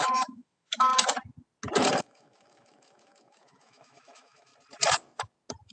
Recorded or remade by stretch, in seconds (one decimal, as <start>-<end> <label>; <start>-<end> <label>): 0.0-0.9 remade; 0.9-2.0 recorded; 2.0-4.5 remade; 4.5-5.7 recorded